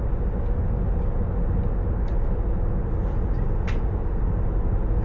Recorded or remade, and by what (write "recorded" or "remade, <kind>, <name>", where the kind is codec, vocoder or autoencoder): recorded